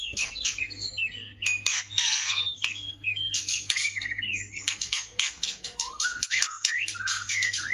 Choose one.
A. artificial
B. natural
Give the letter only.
A